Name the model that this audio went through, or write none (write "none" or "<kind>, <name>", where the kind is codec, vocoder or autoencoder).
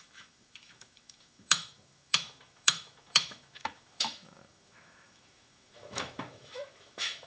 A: autoencoder, DAC-VAE